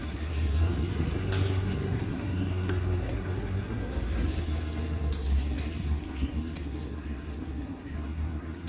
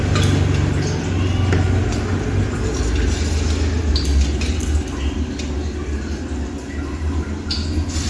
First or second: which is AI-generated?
first